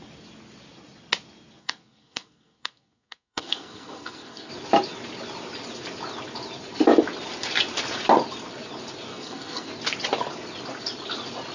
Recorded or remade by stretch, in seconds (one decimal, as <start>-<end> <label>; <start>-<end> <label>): 0.0-1.6 recorded; 1.6-4.5 remade; 4.5-9.1 recorded; 9.1-9.7 remade; 9.7-11.5 recorded